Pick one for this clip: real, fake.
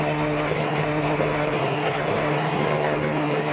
fake